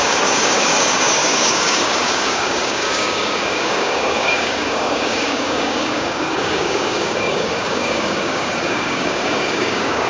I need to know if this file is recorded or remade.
remade